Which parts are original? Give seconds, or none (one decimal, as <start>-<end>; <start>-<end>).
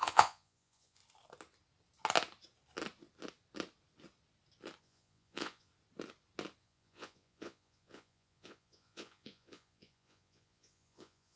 1.0-4.8; 5.7-6.6